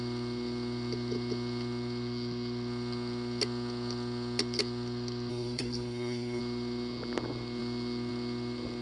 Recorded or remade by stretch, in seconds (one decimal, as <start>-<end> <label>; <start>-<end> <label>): 0.0-5.3 recorded; 5.3-6.4 remade; 6.4-8.8 recorded